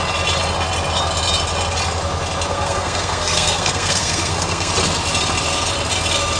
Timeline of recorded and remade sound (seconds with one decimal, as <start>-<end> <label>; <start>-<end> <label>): 0.0-2.5 recorded; 2.5-4.7 remade; 4.7-6.4 recorded